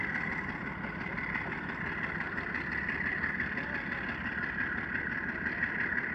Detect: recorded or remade remade